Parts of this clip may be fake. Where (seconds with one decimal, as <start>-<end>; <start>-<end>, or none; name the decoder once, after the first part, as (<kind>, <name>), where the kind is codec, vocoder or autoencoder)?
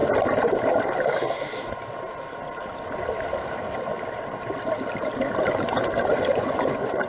6.3-7.1 (vocoder, Vocos)